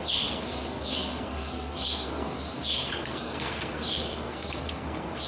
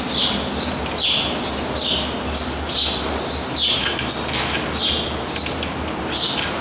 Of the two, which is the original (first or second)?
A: second